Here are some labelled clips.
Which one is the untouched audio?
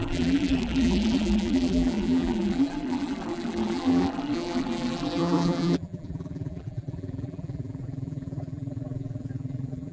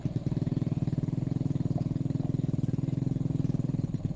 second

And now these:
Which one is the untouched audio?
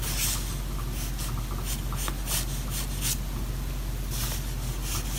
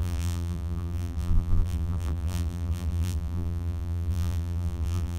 first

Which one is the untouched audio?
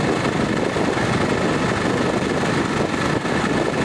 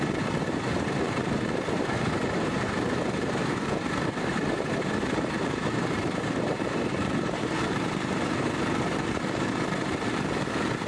first